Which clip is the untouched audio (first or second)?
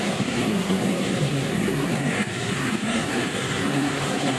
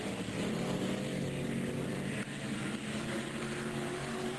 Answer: second